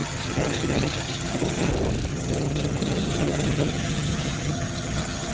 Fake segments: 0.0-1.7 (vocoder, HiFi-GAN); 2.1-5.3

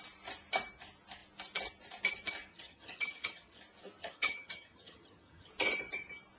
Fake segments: 2.5-3.6 (vocoder, HiFi-GAN); 4.0-5.5